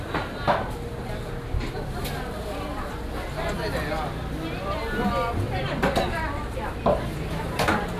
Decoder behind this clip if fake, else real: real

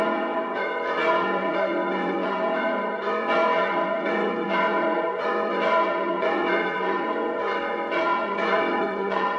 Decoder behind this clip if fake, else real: fake, vocoder, WaveNeXt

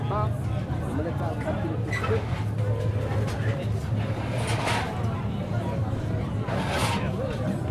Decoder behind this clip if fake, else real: real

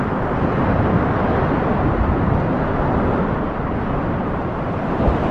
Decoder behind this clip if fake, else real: real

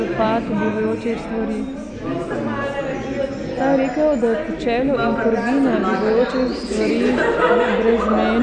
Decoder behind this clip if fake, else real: real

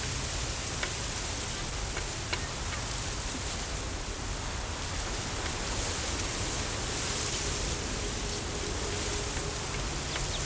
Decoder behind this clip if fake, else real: real